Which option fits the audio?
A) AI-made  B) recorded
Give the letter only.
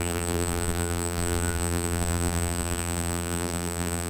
A